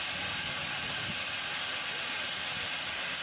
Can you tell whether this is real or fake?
real